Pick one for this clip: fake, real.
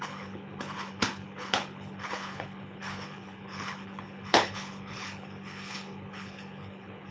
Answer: fake